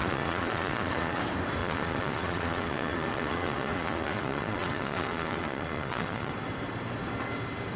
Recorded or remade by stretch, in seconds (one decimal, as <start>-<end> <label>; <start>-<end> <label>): 0.0-1.2 remade; 1.2-1.6 recorded; 1.6-6.3 remade; 6.3-7.8 recorded